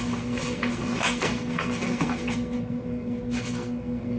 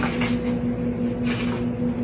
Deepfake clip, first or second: first